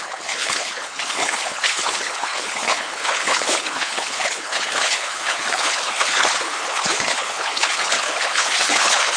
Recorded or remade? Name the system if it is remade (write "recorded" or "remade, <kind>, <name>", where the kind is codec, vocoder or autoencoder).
remade, codec, HILCodec